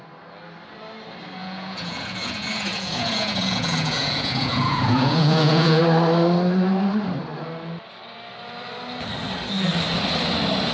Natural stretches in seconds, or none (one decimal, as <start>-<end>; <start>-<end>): 0.0-1.4; 5.8-10.7